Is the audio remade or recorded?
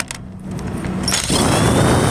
recorded